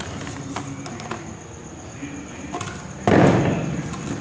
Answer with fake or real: real